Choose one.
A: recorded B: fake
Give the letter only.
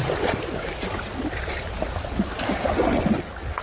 A